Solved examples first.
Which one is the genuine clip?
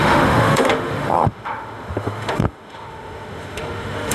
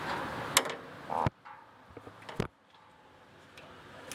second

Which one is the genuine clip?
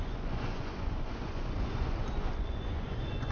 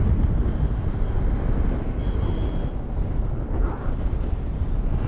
second